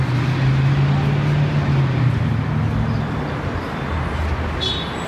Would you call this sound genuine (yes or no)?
yes